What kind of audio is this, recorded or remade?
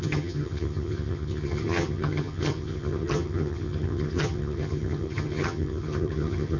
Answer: remade